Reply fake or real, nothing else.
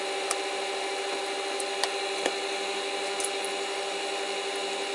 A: real